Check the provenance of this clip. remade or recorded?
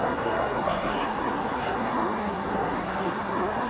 remade